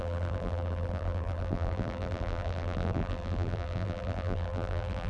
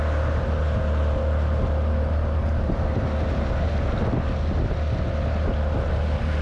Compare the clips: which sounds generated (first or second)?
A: first